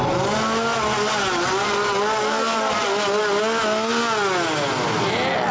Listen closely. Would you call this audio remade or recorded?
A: recorded